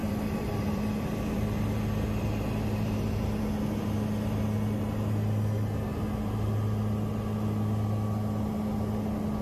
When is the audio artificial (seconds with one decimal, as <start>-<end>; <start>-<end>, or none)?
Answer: 0.0-3.4